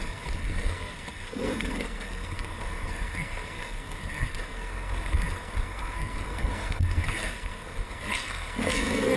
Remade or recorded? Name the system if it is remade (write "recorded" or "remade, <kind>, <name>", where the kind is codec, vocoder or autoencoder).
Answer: remade, codec, SNAC